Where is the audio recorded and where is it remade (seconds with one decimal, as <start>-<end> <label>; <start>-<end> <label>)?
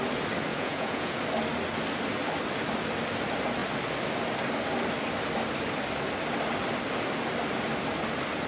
0.0-0.5 recorded; 0.5-1.2 remade; 1.2-8.5 recorded